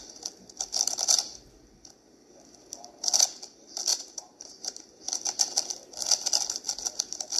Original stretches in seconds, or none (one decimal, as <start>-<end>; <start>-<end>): 0.0-3.9; 5.0-7.4